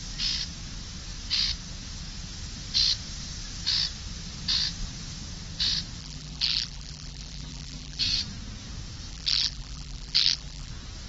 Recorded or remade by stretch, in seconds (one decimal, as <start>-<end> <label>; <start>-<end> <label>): 0.0-6.0 recorded; 6.0-8.0 remade; 8.0-9.1 recorded; 9.1-10.7 remade; 10.7-11.1 recorded